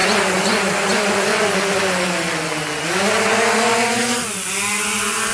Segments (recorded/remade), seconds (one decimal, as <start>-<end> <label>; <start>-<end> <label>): 0.0-1.6 remade; 1.6-3.7 recorded; 3.7-4.5 remade; 4.5-5.3 recorded